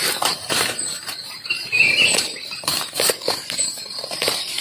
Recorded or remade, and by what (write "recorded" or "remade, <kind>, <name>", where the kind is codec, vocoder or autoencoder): remade, vocoder, BigVGAN v2